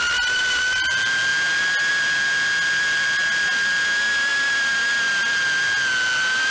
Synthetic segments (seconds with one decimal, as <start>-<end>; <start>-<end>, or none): none